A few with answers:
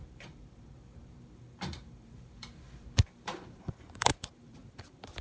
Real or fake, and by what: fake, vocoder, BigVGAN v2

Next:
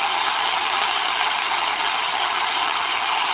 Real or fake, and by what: fake, vocoder, HiFi-GAN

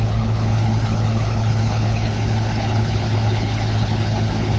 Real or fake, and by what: fake, codec, HILCodec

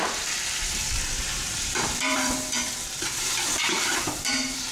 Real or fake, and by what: fake, vocoder, BigVGAN v2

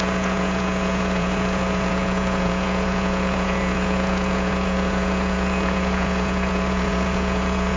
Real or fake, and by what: fake, vocoder, Vocos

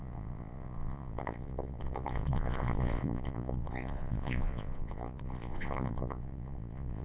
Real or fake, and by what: fake, vocoder, Vocos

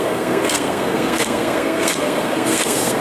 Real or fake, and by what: fake, codec, SNAC